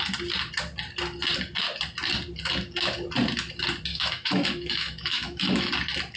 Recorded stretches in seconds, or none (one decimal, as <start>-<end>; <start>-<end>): 0.0-3.9; 5.7-6.2